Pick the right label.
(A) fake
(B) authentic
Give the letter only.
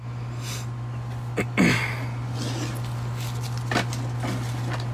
B